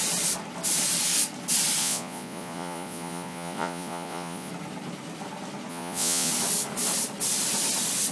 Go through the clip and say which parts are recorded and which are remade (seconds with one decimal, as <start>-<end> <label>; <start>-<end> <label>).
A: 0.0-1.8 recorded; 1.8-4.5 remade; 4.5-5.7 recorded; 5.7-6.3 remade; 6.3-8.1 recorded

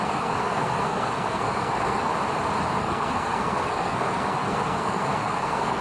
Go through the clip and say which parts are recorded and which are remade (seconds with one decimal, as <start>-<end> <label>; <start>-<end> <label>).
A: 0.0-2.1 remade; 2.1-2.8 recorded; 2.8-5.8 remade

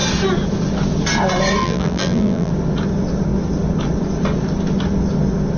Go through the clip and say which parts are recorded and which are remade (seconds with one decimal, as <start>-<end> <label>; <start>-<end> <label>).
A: 0.0-1.6 recorded; 1.6-2.5 remade; 2.5-5.6 recorded

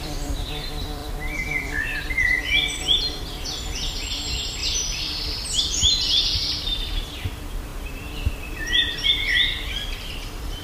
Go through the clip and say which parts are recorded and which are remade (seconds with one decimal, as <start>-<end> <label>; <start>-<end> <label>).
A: 0.0-10.6 remade